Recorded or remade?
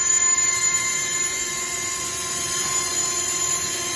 remade